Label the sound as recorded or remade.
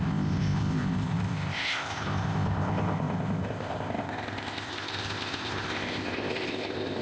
remade